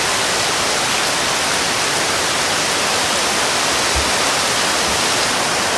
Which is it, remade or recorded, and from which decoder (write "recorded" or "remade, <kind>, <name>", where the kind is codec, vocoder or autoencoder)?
recorded